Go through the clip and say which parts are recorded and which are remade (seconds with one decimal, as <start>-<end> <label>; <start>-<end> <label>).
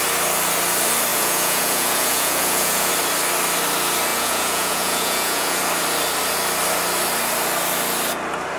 0.0-1.1 recorded; 1.1-2.9 remade; 2.9-4.1 recorded; 4.1-5.6 remade; 5.6-8.6 recorded